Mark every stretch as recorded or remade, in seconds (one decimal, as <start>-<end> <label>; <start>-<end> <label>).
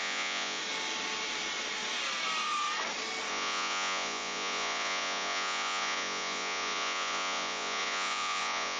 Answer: 0.0-0.6 remade; 0.6-3.3 recorded; 3.3-8.8 remade